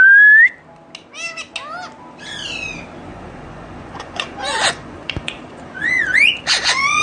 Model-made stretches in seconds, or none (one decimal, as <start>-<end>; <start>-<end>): 3.1-7.0